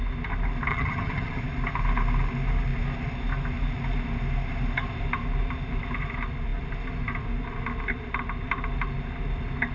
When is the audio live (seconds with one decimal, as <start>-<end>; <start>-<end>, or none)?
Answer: 0.0-0.7; 1.4-9.7